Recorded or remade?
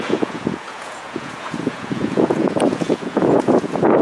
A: remade